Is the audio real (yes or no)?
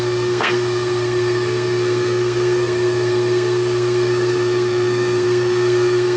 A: no